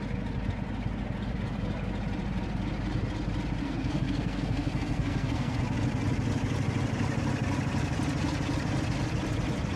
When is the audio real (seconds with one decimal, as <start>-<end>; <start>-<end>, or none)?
0.0-3.6; 5.6-9.8